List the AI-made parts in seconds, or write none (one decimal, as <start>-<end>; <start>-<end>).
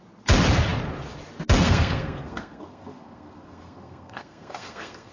1.6-5.1